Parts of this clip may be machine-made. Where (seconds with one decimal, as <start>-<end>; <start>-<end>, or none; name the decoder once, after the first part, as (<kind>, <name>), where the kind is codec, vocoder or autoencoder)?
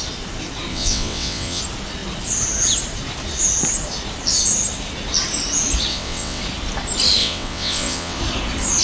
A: 0.7-1.6 (vocoder, WaveNeXt); 5.9-6.4; 7.2-8.2